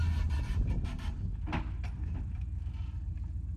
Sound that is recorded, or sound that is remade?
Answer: recorded